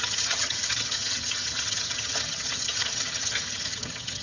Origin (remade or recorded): remade